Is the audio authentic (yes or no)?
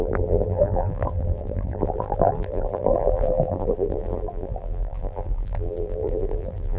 no